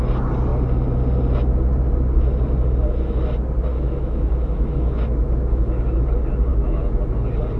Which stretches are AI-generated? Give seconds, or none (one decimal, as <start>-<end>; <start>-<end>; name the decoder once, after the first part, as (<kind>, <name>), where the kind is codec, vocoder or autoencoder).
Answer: 3.7-5.8 (autoencoder, DAC-VAE); 6.5-7.0